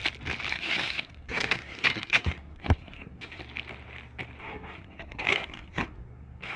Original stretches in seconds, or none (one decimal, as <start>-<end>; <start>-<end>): 0.0-0.5; 3.4-4.4